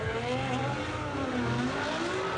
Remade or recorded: recorded